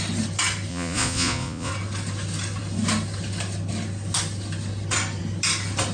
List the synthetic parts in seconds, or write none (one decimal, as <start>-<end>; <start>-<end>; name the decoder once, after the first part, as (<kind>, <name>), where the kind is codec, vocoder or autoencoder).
0.7-1.7 (vocoder, Vocos)